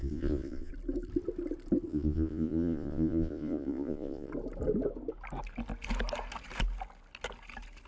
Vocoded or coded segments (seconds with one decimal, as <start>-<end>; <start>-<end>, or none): 0.0-0.7; 1.9-4.3